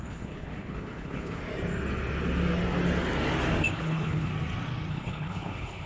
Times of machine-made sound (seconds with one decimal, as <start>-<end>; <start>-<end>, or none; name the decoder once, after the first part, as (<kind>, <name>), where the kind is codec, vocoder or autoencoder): 0.0-1.4 (codec, HILCodec); 3.7-4.3; 4.9-5.9